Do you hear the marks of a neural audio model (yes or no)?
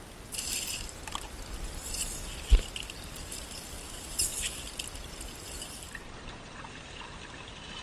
no